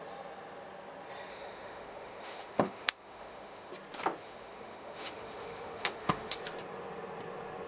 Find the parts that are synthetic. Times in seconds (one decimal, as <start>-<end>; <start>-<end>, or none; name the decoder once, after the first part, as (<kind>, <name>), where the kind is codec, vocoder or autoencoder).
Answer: 1.3-3.7 (autoencoder, DAC-VAE); 4.2-6.4